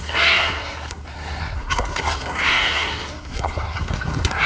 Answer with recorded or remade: remade